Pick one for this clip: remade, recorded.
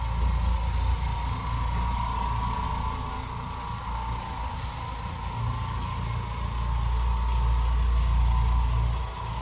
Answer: recorded